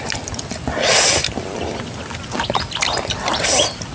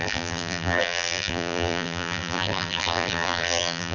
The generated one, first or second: second